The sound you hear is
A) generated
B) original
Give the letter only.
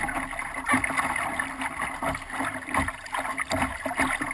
B